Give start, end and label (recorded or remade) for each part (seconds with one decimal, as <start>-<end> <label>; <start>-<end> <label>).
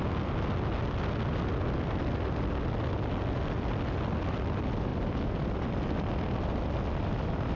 0.0-7.6 recorded